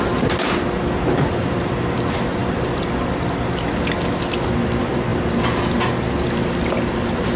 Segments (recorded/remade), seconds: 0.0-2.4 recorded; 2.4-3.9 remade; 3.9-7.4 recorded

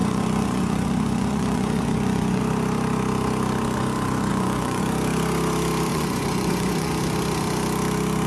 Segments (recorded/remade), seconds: 0.0-2.4 remade; 2.4-4.3 recorded; 4.3-4.8 remade; 4.8-5.9 recorded; 5.9-6.9 remade; 6.9-8.3 recorded

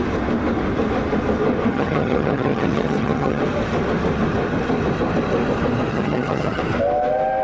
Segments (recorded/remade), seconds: 0.0-1.7 recorded; 1.7-3.4 remade; 3.4-5.9 recorded; 5.9-6.6 remade; 6.6-7.4 recorded

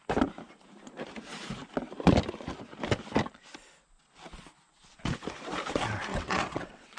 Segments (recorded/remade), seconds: 0.0-6.1 recorded; 6.1-7.0 remade

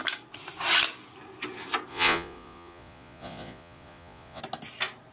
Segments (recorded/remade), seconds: 0.0-1.9 recorded; 1.9-4.4 remade; 4.4-5.1 recorded

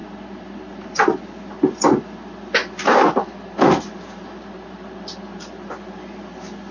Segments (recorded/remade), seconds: 0.0-6.7 recorded

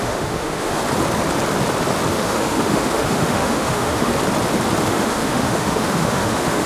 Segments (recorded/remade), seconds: 0.0-0.8 remade; 0.8-2.1 recorded; 2.1-4.1 remade; 4.1-4.8 recorded; 4.8-6.7 remade

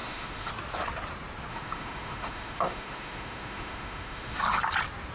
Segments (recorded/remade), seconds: 0.0-0.5 remade; 0.5-1.5 recorded; 1.5-4.6 remade; 4.6-5.1 recorded